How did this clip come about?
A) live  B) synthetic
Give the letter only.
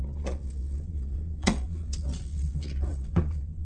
B